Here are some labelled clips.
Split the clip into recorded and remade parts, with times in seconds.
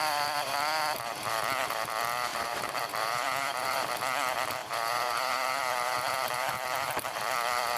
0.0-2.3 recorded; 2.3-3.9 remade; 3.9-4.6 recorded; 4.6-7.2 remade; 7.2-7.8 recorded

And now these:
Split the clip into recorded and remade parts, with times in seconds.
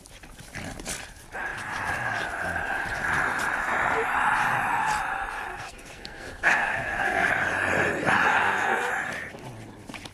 0.0-5.5 recorded; 5.5-7.3 remade; 7.3-8.3 recorded; 8.3-8.9 remade; 8.9-10.1 recorded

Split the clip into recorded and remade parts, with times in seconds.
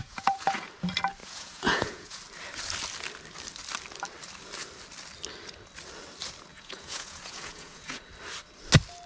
0.0-0.7 remade; 0.7-1.2 recorded; 1.2-2.2 remade; 2.2-6.5 recorded; 6.5-8.0 remade; 8.0-9.1 recorded